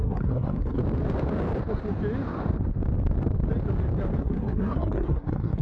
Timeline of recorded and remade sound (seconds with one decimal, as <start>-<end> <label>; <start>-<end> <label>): 0.0-0.8 remade; 0.8-4.2 recorded; 4.2-5.6 remade